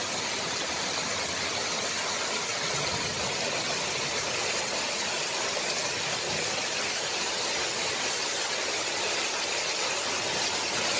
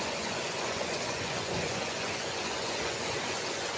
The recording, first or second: first